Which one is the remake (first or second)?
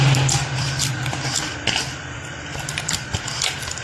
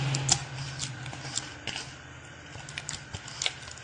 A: first